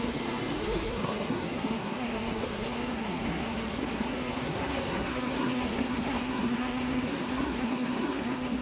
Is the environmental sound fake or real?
fake